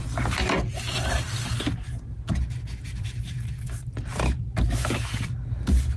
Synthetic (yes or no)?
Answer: no